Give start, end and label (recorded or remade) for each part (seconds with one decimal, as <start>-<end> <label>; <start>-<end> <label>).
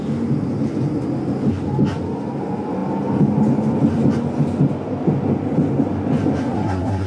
0.0-6.4 recorded; 6.4-7.1 remade